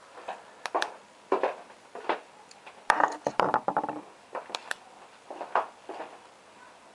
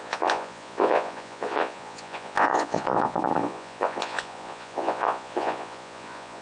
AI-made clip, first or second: second